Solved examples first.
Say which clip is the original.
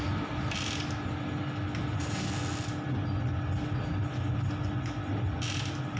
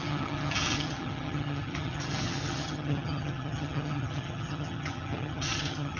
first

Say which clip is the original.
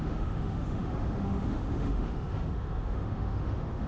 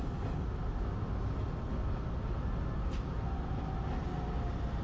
second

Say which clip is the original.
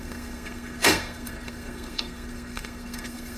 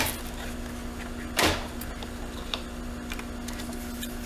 second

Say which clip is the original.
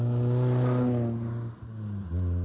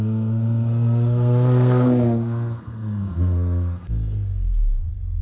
first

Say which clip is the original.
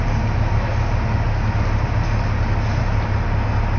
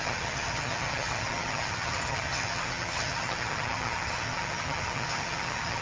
first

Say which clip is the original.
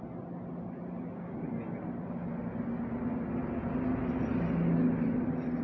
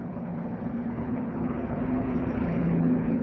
first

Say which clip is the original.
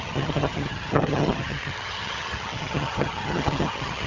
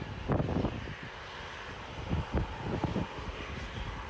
second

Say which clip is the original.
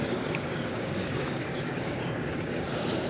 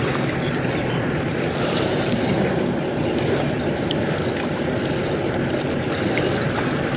second